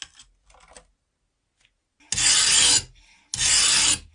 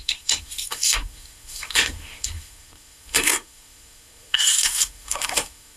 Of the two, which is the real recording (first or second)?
first